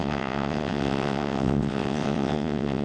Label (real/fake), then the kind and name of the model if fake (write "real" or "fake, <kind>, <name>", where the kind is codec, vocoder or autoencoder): fake, vocoder, WaveNeXt